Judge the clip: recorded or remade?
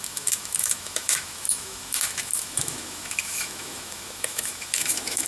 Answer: remade